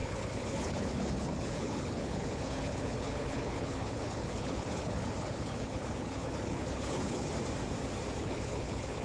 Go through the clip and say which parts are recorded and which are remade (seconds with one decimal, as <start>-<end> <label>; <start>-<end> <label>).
0.0-7.3 remade; 7.3-8.2 recorded; 8.2-9.0 remade